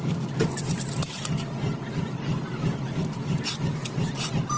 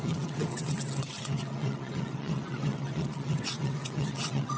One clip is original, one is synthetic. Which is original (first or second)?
first